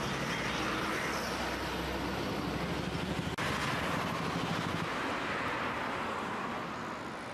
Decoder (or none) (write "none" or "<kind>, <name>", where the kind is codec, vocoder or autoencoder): none